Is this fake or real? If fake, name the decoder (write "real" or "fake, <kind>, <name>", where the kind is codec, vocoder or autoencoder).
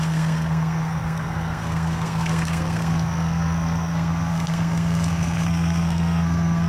fake, codec, SNAC